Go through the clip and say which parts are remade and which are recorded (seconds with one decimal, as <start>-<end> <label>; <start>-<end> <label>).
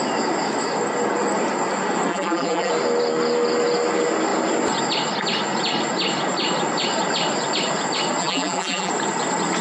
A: 0.0-2.1 recorded; 2.1-2.7 remade; 2.7-8.2 recorded; 8.2-8.9 remade; 8.9-9.6 recorded